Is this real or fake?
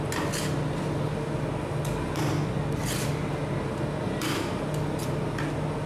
real